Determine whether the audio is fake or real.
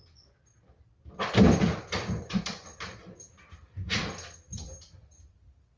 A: real